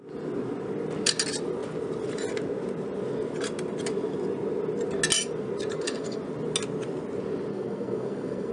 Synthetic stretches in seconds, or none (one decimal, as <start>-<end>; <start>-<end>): 5.7-6.2; 7.5-8.5